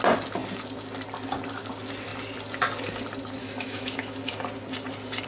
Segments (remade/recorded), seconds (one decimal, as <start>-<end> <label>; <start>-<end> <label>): 0.0-3.4 recorded; 3.4-4.3 remade; 4.3-5.3 recorded